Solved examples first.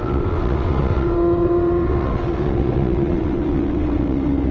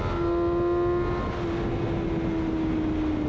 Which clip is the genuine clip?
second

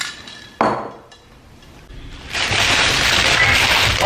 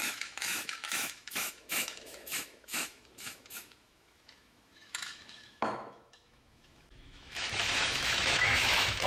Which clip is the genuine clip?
first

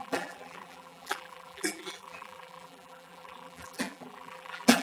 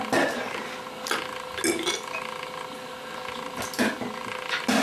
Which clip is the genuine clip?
second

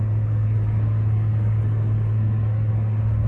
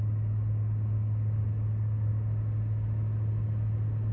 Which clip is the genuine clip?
second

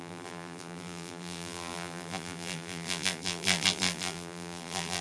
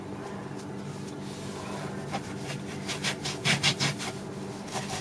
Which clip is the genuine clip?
second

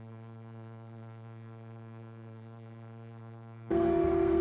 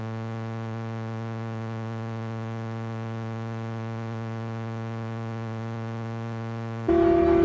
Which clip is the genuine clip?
second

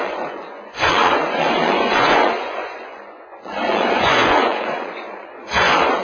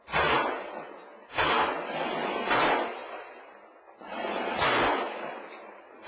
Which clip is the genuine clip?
second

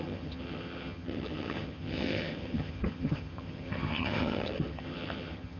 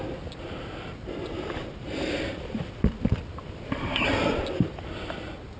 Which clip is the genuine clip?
second